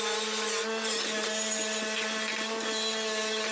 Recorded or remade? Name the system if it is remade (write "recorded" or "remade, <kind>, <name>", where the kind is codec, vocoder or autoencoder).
recorded